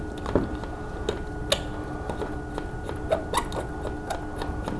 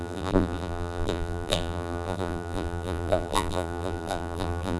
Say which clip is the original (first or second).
first